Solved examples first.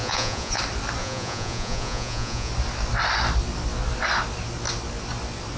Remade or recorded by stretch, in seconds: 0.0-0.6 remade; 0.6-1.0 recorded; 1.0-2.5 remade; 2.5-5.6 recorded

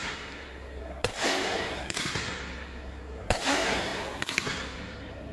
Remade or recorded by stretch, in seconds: 0.0-5.3 remade

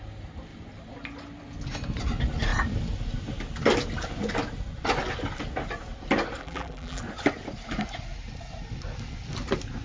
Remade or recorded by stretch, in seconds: 0.0-6.4 recorded; 6.4-7.0 remade; 7.0-9.8 recorded

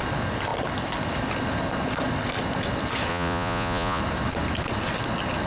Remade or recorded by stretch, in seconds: 0.0-3.1 recorded; 3.1-4.0 remade; 4.0-5.5 recorded

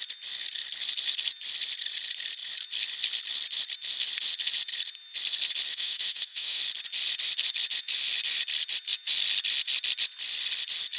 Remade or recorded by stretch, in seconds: 0.0-5.7 recorded; 5.7-6.6 remade; 6.6-11.0 recorded

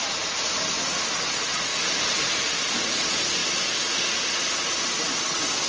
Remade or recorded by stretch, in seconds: 0.0-3.4 remade; 3.4-4.4 recorded; 4.4-5.7 remade